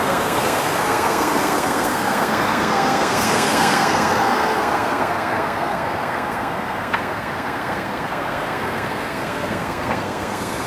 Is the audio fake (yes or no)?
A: yes